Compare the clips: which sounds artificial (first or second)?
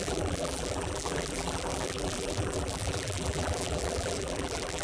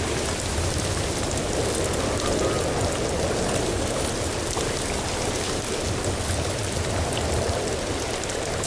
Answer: first